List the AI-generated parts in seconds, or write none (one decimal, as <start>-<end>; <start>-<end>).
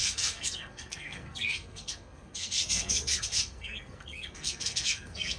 0.0-5.4